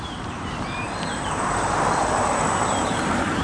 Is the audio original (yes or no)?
no